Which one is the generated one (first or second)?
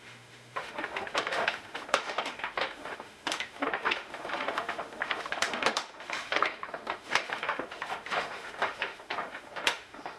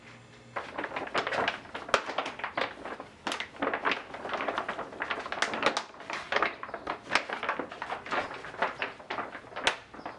first